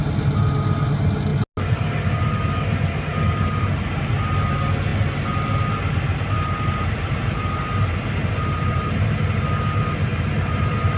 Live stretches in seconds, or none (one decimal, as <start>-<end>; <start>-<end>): 0.0-11.0